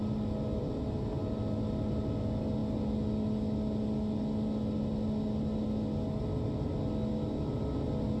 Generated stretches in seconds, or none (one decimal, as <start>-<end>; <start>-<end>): none